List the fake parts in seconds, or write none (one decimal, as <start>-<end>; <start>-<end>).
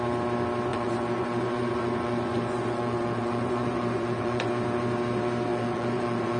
0.7-4.5; 5.5-6.4